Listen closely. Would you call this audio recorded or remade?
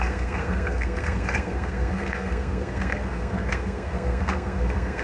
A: remade